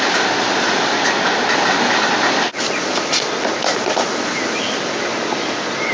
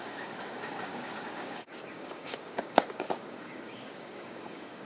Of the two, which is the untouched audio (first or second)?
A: first